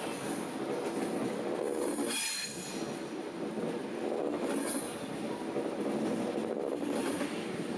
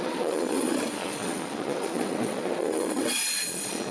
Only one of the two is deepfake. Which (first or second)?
second